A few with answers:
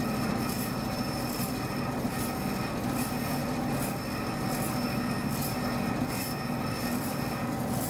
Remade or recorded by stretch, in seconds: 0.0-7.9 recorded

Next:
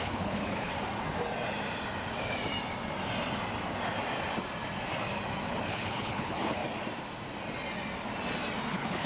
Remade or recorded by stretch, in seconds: 0.0-0.7 remade; 0.7-5.7 recorded; 5.7-6.6 remade; 6.6-8.7 recorded; 8.7-9.1 remade

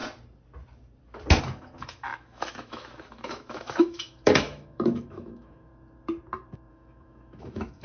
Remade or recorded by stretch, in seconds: 0.0-1.4 recorded; 1.4-5.7 remade; 5.7-6.7 recorded; 6.7-7.8 remade

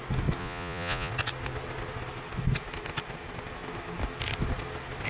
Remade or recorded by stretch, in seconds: 0.0-0.4 recorded; 0.4-1.1 remade; 1.1-5.1 recorded